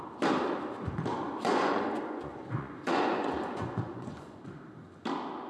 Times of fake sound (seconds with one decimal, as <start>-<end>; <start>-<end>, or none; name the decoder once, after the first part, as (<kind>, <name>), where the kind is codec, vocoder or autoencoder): 1.1-4.4 (vocoder, Vocos)